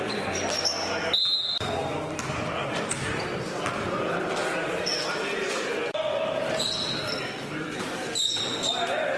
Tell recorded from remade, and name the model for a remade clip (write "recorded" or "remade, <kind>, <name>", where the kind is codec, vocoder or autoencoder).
recorded